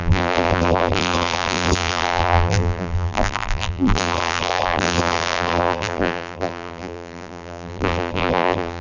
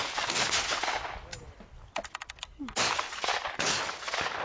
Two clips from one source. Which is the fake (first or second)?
first